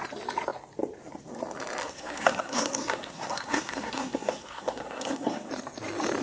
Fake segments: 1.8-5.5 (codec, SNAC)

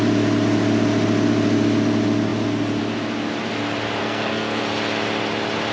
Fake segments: 4.0-4.6 (codec, SNAC)

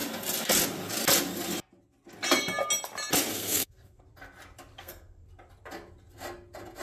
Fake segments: 3.3-4.0 (codec, SNAC); 4.7-5.3

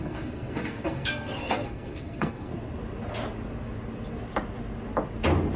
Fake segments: 0.0-2.5 (codec, SNAC)

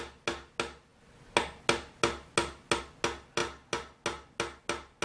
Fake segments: none

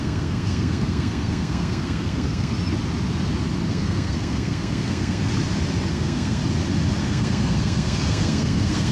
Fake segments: 0.0-2.5 (codec, SNAC); 3.7-5.3; 5.9-6.4; 7.0-8.9

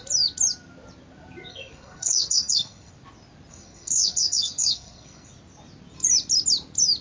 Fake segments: 1.5-2.9 (codec, SNAC); 3.5-5.3

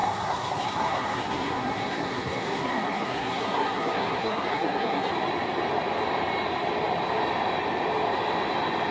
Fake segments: 0.0-5.1 (codec, SNAC)